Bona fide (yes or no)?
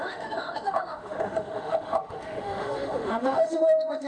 no